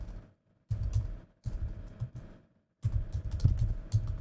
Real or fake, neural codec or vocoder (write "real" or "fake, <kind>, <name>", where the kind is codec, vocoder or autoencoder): real